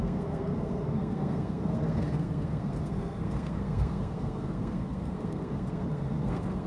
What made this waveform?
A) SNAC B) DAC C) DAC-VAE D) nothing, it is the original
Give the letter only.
A